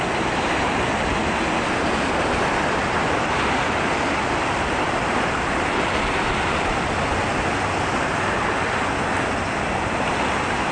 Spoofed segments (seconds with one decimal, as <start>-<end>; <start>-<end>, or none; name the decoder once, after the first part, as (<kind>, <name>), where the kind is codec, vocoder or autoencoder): none